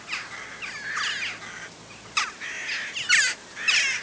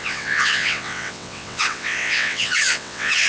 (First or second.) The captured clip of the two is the first